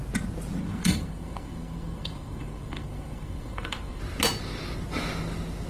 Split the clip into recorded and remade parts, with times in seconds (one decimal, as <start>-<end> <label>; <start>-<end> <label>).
0.0-0.6 recorded; 0.6-4.0 remade; 4.0-5.7 recorded